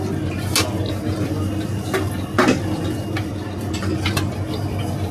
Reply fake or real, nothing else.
real